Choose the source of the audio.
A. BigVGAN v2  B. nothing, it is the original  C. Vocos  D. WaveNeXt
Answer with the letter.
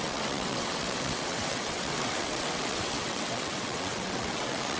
D